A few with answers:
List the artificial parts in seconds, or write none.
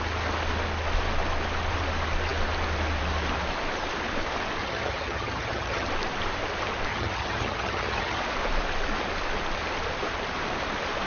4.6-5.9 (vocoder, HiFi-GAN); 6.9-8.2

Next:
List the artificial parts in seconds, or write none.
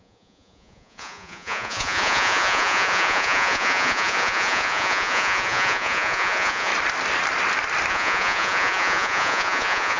0.0-6.7 (vocoder, Vocos); 7.9-10.0